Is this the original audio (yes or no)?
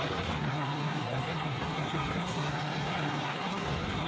no